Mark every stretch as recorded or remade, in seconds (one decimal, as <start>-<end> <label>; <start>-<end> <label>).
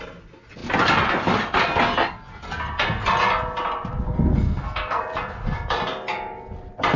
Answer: 0.0-4.3 recorded; 4.3-5.0 remade; 5.0-7.0 recorded